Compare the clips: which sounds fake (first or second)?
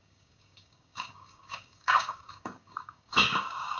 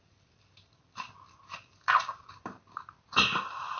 first